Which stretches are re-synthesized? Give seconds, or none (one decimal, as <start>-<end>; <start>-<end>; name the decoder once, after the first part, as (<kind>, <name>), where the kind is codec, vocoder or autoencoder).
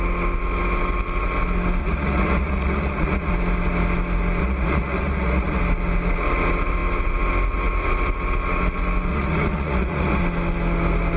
1.8-3.3 (vocoder, Vocos); 4.4-5.6; 9.1-10.2